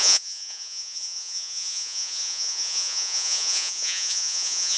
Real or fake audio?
fake